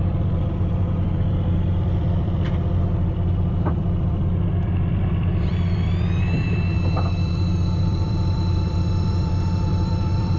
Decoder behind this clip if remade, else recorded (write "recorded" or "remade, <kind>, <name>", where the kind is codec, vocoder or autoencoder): remade, vocoder, BigVGAN v2